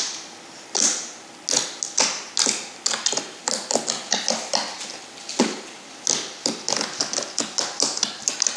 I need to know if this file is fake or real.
real